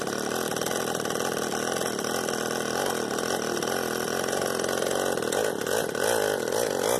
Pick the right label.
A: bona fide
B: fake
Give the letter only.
A